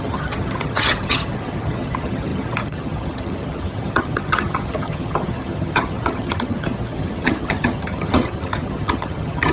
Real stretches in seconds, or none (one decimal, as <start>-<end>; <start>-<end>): none